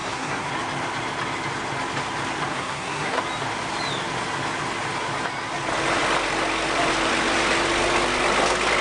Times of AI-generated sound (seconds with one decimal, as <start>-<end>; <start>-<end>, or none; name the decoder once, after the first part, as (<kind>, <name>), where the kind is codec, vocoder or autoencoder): 0.0-0.5 (codec, SNAC); 2.5-3.2